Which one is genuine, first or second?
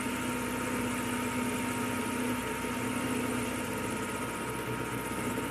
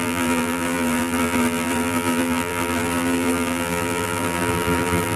first